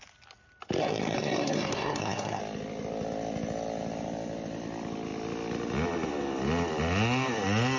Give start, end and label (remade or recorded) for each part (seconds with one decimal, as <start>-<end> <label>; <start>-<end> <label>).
0.0-0.8 recorded; 0.8-2.4 remade; 2.4-7.8 recorded